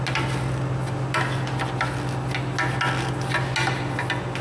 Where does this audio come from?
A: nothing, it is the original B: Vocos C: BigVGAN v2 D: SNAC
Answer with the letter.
A